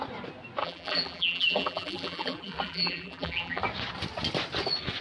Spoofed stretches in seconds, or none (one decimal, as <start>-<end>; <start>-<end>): 0.6-3.6

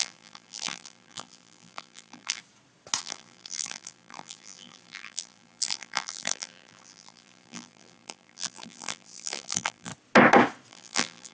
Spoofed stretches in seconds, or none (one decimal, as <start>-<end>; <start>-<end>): 0.0-2.4; 3.0-9.9; 10.7-11.3

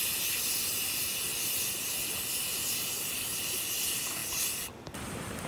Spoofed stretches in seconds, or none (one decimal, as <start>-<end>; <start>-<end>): 0.0-1.3; 3.4-5.5